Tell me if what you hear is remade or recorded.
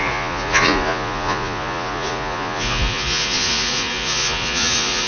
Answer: remade